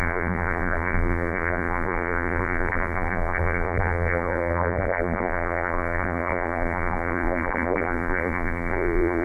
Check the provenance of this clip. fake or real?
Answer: fake